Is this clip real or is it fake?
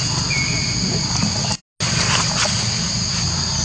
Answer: real